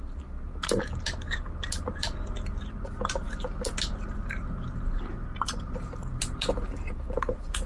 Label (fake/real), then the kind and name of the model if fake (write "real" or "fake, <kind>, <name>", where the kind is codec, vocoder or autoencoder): fake, vocoder, BigVGAN v2